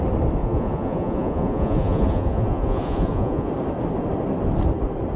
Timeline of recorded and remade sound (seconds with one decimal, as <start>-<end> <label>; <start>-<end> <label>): 0.0-0.4 recorded; 0.4-3.5 remade; 3.5-5.2 recorded